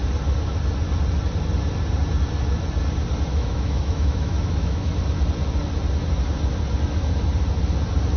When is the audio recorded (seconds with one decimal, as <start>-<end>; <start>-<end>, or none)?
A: 0.0-3.3; 5.0-8.2

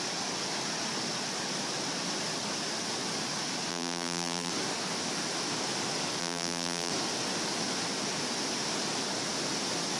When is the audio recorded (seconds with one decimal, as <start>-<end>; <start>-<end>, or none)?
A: 0.0-3.7; 4.5-6.2; 6.9-10.0

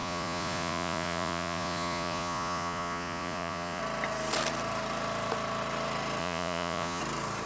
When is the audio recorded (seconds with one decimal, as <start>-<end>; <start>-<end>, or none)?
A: 3.8-6.2; 7.0-7.5

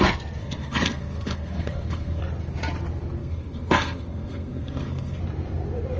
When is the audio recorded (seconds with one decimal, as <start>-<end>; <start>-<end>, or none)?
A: 0.0-0.4; 2.2-3.2; 5.2-6.0

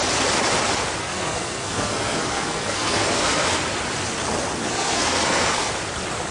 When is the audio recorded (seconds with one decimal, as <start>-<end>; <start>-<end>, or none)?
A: 0.0-1.0; 3.6-4.6; 5.7-6.3